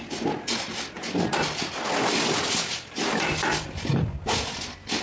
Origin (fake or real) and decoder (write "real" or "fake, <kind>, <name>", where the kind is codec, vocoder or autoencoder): real